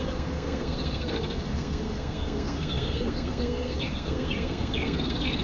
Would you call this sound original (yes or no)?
no